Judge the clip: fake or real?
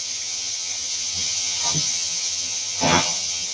fake